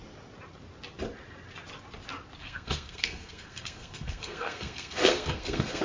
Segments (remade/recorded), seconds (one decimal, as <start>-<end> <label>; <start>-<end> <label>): 0.0-2.4 recorded; 2.4-5.8 remade